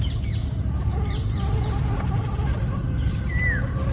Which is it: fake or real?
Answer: real